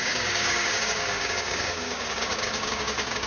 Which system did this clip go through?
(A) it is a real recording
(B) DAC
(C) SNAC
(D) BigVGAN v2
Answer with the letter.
B